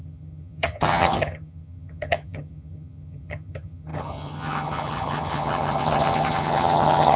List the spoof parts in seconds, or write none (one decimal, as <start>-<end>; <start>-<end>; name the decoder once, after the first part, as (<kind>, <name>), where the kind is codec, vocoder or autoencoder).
0.0-7.2 (vocoder, HiFi-GAN)